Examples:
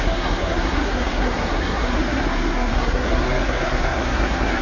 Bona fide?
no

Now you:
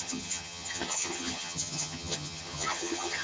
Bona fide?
no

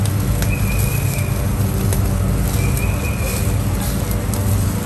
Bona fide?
yes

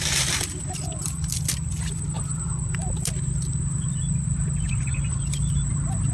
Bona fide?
yes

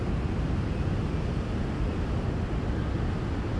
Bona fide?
yes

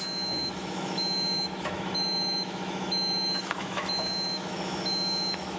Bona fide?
no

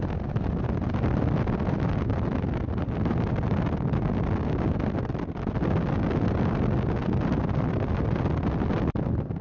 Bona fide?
yes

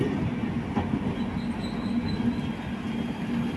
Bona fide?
yes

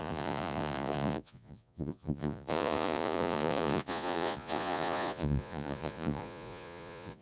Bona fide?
no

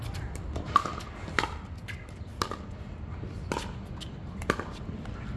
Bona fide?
yes